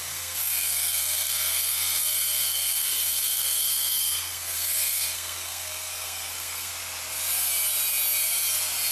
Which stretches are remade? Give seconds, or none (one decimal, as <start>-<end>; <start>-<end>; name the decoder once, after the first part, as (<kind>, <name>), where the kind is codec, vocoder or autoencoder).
0.0-6.7 (codec, SNAC)